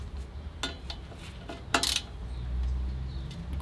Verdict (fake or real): real